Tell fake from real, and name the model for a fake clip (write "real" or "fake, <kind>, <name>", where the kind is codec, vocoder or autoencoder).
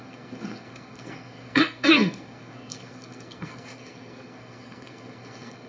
fake, codec, SNAC